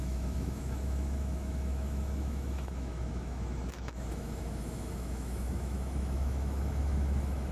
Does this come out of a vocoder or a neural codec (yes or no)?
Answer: yes